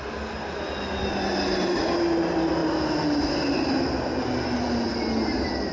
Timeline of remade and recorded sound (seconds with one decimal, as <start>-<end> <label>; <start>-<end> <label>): 0.0-5.7 recorded